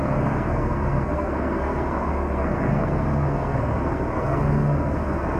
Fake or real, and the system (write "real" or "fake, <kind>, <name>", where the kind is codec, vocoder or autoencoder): fake, codec, SNAC